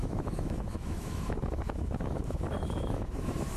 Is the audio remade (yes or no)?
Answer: yes